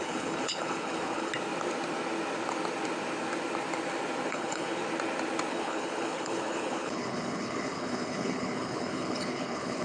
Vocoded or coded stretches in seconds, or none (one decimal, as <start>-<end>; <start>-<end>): 0.0-1.3; 4.3-4.8; 5.5-9.8